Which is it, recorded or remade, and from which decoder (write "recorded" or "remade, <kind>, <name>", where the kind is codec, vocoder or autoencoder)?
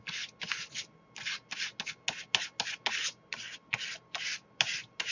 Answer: recorded